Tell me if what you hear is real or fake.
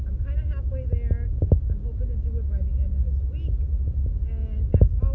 real